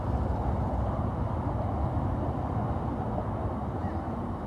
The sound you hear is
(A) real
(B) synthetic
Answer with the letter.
A